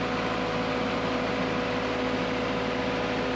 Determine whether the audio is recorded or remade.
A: recorded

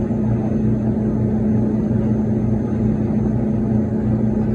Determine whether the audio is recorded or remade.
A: recorded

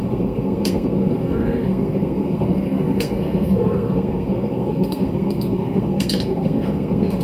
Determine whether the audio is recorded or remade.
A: remade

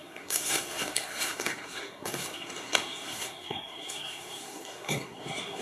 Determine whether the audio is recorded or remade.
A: remade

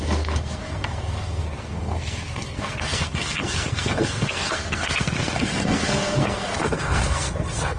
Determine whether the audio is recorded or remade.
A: remade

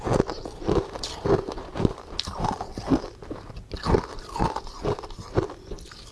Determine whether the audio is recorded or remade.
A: recorded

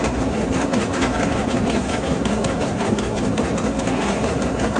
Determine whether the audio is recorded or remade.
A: remade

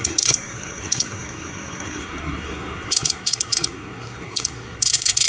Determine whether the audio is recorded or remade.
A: remade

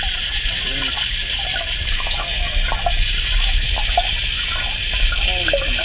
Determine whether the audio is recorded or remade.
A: recorded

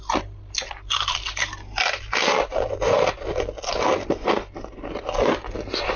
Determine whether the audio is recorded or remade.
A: recorded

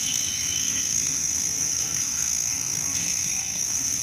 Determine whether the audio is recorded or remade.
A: remade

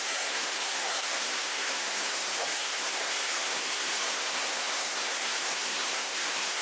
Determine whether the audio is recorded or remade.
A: remade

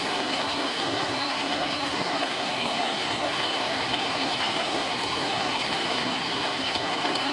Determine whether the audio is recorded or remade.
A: remade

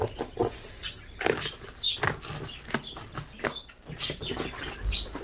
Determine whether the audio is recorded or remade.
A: recorded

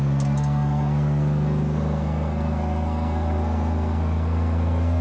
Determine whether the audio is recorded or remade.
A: remade